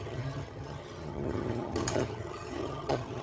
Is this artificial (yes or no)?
yes